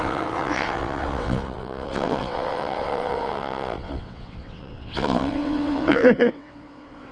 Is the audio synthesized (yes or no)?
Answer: yes